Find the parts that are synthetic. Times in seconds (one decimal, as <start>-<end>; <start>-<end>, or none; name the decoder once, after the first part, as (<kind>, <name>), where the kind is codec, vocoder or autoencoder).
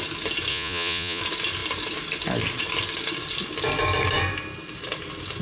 0.5-1.2 (vocoder, Vocos)